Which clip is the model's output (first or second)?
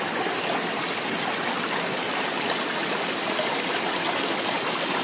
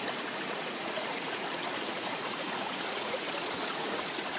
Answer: second